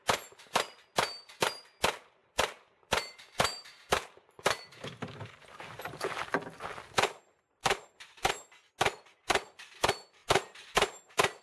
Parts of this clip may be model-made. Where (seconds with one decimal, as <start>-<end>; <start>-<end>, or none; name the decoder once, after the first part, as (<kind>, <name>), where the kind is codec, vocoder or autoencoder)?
2.2-6.1 (vocoder, BigVGAN v2); 7.6-8.3; 10.2-11.4